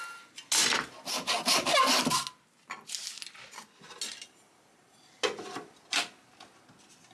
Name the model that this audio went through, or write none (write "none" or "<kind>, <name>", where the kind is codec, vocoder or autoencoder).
none